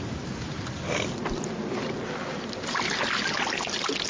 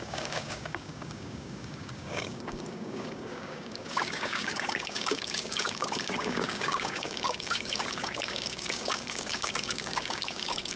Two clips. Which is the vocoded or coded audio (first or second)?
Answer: second